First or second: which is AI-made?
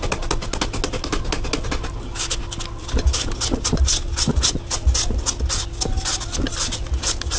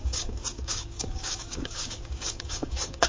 second